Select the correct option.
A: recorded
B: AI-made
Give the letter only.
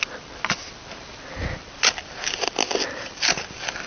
A